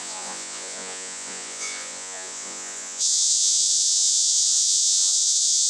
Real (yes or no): no